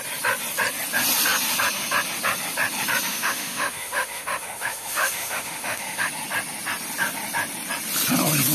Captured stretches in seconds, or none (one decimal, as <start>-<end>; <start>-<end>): 0.0-3.1; 6.1-8.5

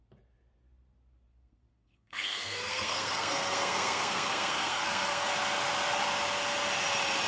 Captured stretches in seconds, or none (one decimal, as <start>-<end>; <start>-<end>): 0.0-1.3; 5.3-7.3

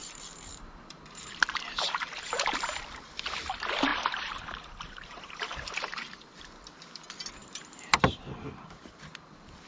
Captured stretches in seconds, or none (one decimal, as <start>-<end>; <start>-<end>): 2.8-3.9; 6.4-7.4; 8.0-9.7

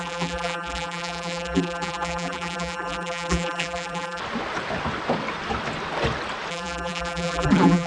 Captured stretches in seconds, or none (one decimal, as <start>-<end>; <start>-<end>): 4.2-6.5